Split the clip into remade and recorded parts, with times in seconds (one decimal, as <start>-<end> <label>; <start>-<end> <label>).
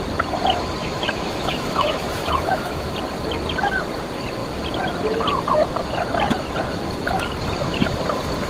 0.0-0.8 recorded; 0.8-2.9 remade; 2.9-8.5 recorded